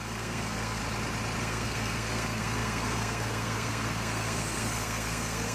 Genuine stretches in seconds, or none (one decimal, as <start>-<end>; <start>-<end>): 0.8-1.4